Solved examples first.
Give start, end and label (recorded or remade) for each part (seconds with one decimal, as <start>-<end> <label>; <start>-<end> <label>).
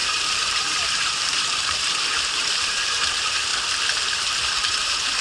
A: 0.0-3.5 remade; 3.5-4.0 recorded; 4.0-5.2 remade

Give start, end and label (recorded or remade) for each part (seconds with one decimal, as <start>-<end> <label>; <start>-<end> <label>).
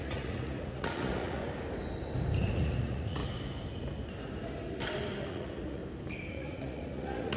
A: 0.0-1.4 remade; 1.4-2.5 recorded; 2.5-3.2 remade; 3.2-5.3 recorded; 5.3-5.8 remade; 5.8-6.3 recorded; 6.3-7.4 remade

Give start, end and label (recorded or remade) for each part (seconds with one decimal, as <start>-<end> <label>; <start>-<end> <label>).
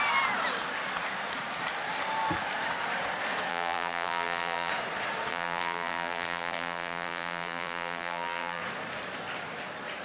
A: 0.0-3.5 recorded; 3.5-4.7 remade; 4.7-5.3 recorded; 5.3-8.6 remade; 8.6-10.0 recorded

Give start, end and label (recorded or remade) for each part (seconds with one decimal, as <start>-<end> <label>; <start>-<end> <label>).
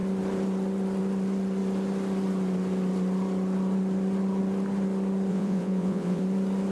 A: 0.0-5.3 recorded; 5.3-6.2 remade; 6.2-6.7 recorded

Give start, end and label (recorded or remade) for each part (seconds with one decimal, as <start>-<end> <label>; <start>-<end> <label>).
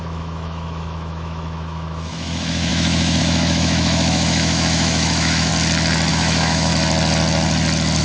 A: 0.0-5.5 remade; 5.5-6.1 recorded; 6.1-6.7 remade; 6.7-8.0 recorded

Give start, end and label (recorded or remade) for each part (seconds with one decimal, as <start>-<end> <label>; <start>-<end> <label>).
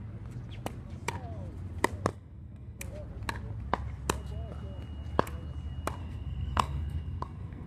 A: 0.0-2.1 recorded; 2.1-2.8 remade; 2.8-6.0 recorded; 6.0-7.7 remade